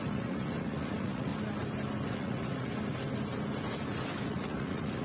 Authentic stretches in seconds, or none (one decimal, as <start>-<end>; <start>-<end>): 1.3-2.1; 2.7-4.3